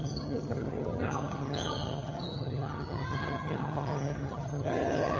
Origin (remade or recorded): remade